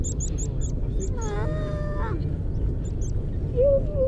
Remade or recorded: recorded